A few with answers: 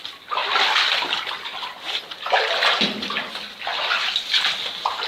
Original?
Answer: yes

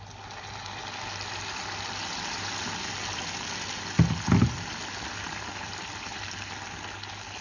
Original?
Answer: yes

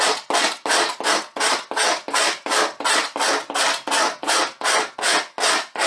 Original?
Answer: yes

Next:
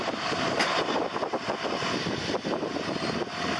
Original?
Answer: yes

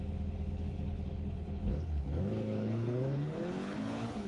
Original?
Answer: no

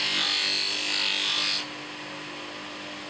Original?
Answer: yes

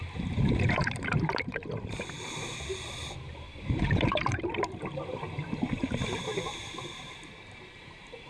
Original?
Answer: no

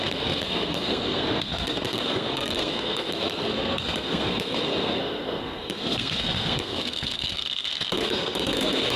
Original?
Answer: no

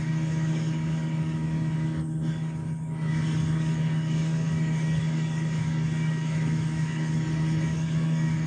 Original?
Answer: no